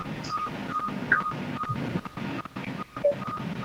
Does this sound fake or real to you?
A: real